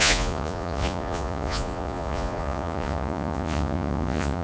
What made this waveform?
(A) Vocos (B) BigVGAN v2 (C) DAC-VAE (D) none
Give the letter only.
A